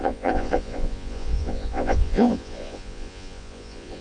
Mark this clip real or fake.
fake